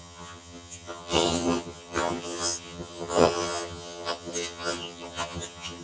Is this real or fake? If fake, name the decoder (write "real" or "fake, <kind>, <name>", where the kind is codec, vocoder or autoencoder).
fake, vocoder, HiFi-GAN